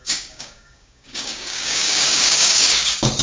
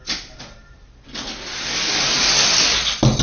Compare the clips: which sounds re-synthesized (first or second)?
first